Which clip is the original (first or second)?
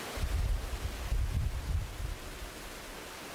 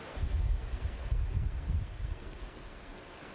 first